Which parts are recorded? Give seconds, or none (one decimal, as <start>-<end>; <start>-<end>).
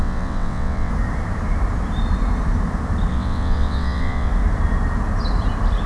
0.9-3.1; 4.3-5.9